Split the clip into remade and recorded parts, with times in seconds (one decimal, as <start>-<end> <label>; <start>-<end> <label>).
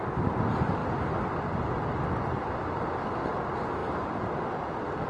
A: 0.0-5.1 recorded